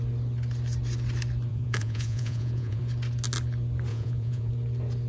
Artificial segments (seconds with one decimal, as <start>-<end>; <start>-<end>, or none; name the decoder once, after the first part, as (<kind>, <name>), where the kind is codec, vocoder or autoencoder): 1.5-2.8 (vocoder, Vocos); 3.9-4.5